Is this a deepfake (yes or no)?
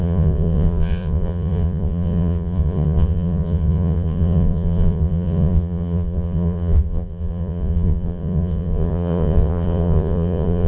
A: yes